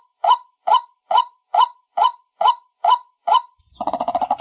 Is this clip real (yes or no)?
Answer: no